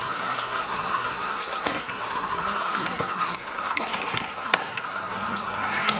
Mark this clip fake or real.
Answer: fake